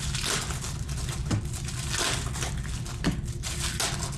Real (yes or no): yes